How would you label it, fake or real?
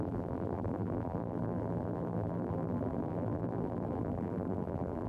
fake